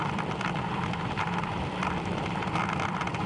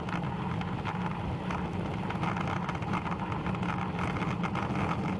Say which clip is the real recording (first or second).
second